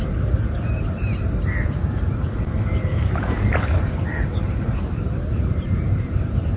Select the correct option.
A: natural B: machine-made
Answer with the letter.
B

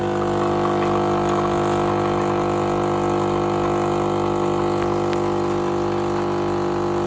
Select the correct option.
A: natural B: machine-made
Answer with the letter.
A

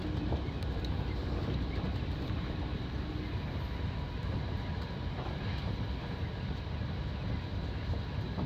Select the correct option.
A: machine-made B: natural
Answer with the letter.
B